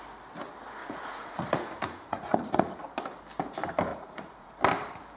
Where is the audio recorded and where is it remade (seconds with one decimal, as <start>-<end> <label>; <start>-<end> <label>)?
0.0-0.8 recorded; 0.8-2.7 remade; 2.7-3.9 recorded; 3.9-4.6 remade; 4.6-5.2 recorded